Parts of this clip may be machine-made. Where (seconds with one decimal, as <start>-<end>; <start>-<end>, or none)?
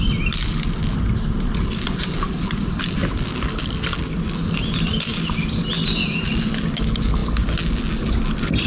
none